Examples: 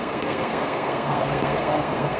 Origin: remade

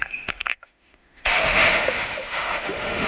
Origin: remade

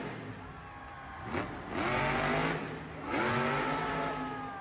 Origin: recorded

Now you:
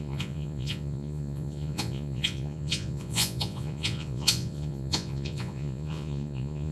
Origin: remade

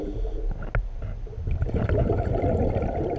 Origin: recorded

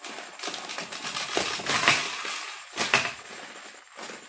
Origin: recorded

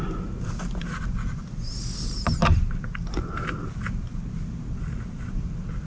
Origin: recorded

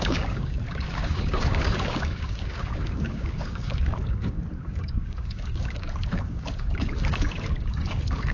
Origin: remade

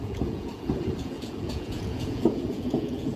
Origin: remade